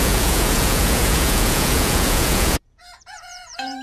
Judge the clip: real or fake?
fake